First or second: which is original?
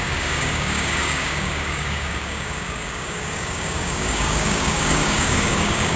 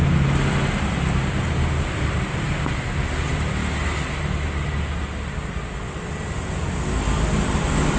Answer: second